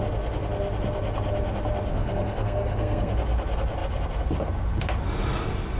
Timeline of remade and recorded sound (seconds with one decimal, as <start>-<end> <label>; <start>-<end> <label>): 0.0-1.9 recorded; 1.9-3.1 remade; 3.1-5.8 recorded